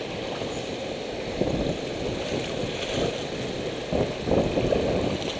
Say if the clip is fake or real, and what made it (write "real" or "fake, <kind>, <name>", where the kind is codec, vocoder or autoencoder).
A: real